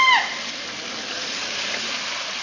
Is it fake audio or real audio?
real